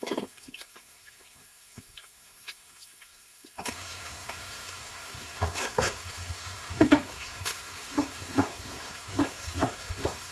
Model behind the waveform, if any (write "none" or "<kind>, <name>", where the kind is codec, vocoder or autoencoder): codec, SNAC